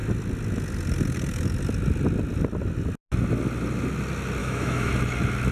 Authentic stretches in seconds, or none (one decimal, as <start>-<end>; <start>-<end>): 0.0-4.4; 4.9-5.5